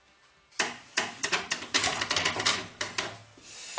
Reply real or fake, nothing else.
real